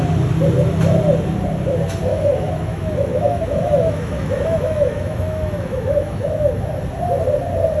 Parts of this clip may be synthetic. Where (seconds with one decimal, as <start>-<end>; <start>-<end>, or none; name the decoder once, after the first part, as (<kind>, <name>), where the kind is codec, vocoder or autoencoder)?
2.1-6.5 (autoencoder, DAC-VAE)